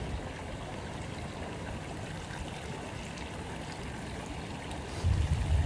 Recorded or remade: recorded